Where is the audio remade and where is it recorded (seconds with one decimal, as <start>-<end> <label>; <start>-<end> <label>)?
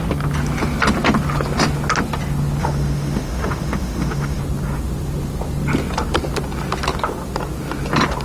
0.0-2.6 recorded; 2.6-4.4 remade; 4.4-8.2 recorded